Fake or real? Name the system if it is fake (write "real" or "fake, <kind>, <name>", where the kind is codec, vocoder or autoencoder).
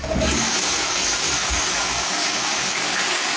fake, codec, DAC